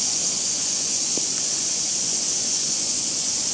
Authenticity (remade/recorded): remade